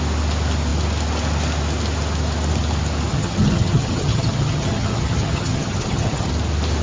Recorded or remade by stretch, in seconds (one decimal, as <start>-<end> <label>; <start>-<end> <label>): 0.0-3.1 recorded; 3.1-6.3 remade; 6.3-6.8 recorded